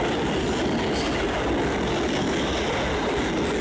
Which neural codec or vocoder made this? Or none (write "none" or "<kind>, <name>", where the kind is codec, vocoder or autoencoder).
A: none